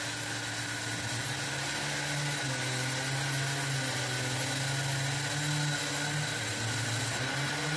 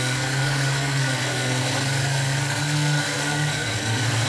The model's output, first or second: second